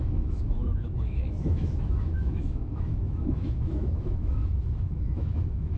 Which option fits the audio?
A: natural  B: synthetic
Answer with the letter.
B